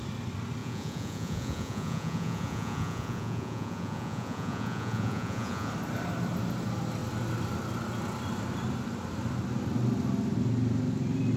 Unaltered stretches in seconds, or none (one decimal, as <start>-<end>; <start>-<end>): 0.0-0.6; 5.7-11.4